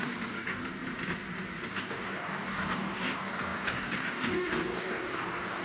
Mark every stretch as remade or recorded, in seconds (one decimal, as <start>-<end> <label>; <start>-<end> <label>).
0.0-0.6 remade; 0.6-1.7 recorded; 1.7-5.6 remade

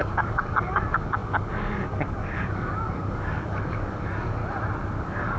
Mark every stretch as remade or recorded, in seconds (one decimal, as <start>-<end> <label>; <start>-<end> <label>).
0.0-4.4 remade; 4.4-5.0 recorded; 5.0-5.4 remade

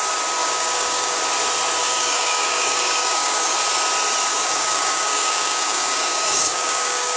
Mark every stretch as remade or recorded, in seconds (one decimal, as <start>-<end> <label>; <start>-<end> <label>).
0.0-0.4 recorded; 0.4-1.2 remade; 1.2-1.8 recorded; 1.8-3.5 remade; 3.5-4.3 recorded; 4.3-7.2 remade

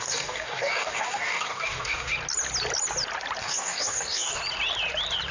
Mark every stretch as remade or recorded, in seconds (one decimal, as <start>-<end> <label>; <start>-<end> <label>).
0.0-2.1 remade; 2.1-3.4 recorded; 3.4-4.4 remade; 4.4-5.3 recorded

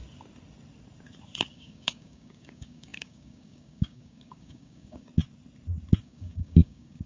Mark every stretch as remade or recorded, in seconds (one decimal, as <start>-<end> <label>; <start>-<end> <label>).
0.0-1.5 recorded; 1.5-5.1 remade; 5.1-6.0 recorded; 6.0-7.1 remade